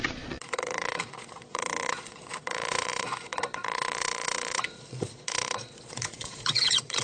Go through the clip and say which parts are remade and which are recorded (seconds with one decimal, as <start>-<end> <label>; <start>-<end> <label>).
0.0-7.0 remade

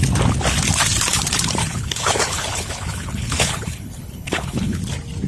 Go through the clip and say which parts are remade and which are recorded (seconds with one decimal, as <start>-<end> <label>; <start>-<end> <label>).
0.0-1.6 recorded; 1.6-4.8 remade; 4.8-5.3 recorded

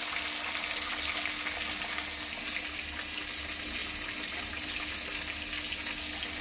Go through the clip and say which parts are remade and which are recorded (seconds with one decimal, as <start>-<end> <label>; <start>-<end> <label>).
0.0-6.4 recorded